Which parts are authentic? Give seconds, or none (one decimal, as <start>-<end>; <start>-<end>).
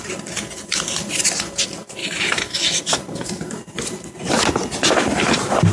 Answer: 0.0-2.0; 2.8-5.7